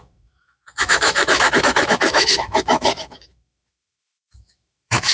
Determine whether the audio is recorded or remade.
remade